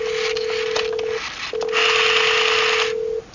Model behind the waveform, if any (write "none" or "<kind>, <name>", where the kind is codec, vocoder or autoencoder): none